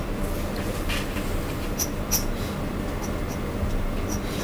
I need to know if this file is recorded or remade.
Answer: recorded